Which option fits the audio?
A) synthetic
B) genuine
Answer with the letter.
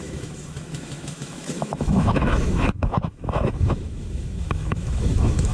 A